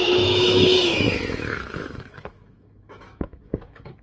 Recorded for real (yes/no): no